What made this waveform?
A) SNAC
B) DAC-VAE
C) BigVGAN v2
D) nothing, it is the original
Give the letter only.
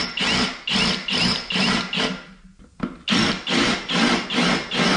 D